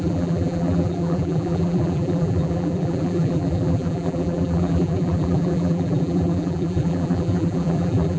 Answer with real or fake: fake